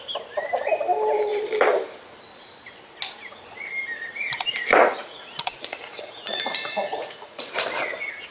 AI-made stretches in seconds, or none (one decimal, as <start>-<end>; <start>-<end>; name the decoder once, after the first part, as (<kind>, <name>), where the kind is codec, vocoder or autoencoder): 4.8-7.5 (vocoder, Vocos)

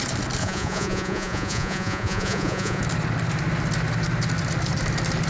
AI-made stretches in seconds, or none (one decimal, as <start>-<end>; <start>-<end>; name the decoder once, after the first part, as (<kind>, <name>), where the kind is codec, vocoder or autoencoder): 0.4-2.8 (vocoder, Vocos)

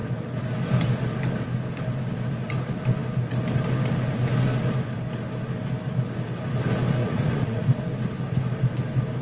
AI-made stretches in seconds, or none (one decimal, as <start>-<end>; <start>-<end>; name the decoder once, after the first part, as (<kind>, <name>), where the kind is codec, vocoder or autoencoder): 7.0-7.8 (vocoder, Vocos)

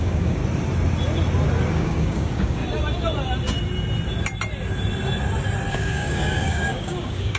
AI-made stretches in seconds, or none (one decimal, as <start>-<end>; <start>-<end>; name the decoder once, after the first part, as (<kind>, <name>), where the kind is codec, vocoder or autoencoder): 0.0-0.4 (codec, DAC); 1.7-2.6; 5.7-7.4